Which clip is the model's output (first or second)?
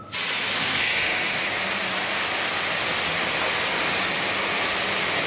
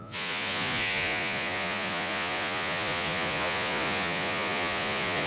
second